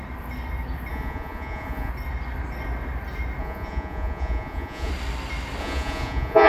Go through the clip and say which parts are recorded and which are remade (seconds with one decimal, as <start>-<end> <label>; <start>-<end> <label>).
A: 0.0-0.9 recorded; 0.9-1.9 remade; 1.9-3.4 recorded; 3.4-4.9 remade; 4.9-5.6 recorded; 5.6-6.5 remade